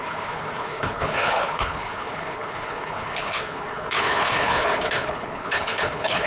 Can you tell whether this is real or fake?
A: fake